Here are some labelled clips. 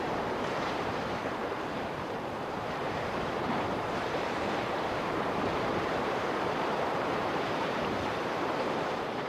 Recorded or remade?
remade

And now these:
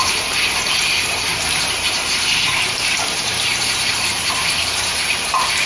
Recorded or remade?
remade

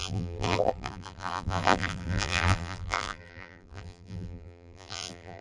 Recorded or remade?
remade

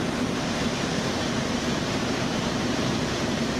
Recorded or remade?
remade